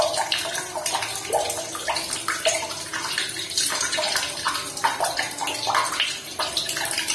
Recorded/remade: recorded